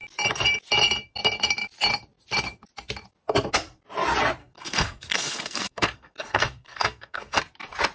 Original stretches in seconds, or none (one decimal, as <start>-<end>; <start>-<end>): 0.0-4.4; 7.4-7.9